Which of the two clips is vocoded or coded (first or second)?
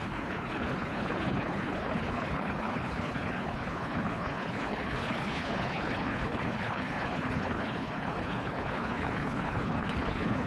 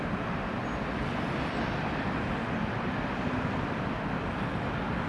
first